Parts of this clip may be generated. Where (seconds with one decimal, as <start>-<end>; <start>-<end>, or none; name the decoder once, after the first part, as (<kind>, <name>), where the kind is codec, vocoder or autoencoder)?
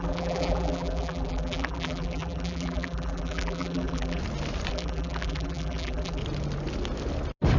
0.0-4.2 (vocoder, BigVGAN v2); 4.7-6.2